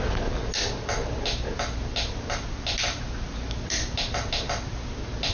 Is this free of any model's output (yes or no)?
yes